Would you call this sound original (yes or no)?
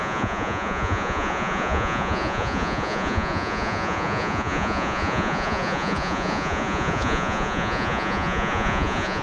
no